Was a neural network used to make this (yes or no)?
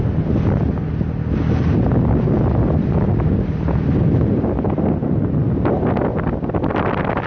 no